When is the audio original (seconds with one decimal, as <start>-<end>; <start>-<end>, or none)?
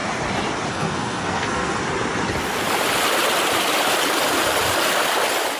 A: 0.0-0.7; 1.8-5.6